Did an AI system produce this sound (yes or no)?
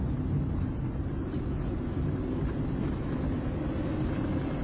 no